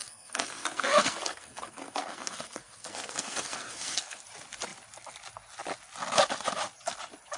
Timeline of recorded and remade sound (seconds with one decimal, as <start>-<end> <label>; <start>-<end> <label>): 0.0-4.2 remade; 4.2-7.4 recorded